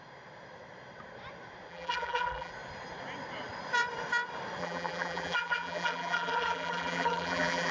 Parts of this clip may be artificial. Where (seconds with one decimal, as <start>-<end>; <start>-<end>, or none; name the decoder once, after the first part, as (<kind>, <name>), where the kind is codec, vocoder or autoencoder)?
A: 1.7-2.5 (vocoder, BigVGAN v2); 4.6-7.7